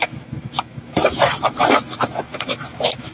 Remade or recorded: remade